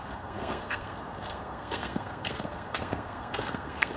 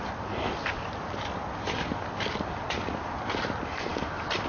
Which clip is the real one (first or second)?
second